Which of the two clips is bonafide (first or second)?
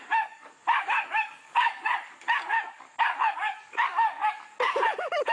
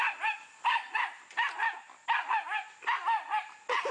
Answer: second